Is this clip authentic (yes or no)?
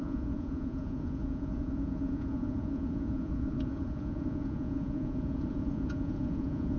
no